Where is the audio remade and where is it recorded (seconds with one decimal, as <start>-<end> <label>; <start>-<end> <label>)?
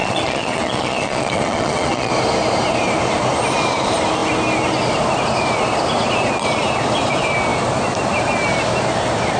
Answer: 0.0-2.1 remade; 2.1-9.4 recorded